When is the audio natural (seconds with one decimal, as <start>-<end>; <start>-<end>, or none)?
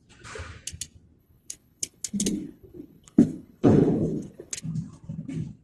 0.0-1.2; 4.6-5.6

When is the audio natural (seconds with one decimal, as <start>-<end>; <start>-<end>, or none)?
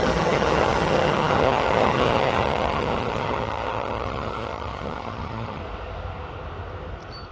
5.6-7.3